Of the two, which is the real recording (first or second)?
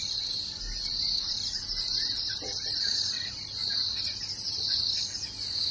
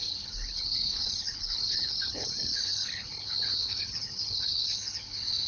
first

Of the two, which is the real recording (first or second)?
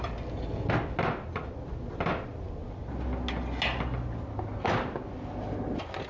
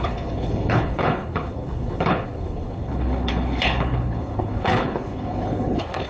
first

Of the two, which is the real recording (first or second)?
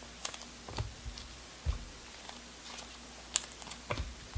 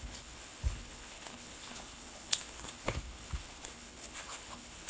first